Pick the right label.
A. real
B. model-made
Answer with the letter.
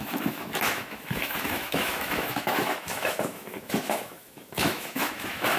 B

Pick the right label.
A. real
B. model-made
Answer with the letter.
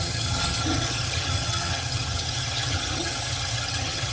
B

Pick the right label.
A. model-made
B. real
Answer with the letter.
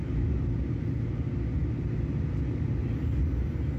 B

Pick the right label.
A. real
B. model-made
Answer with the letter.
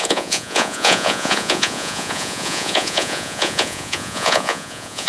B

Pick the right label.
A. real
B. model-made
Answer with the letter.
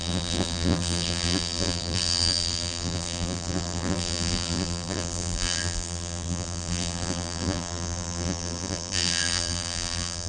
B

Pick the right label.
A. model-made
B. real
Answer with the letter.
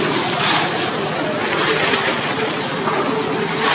B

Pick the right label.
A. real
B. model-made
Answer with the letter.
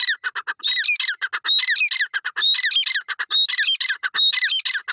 A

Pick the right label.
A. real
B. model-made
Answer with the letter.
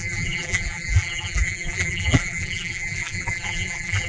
B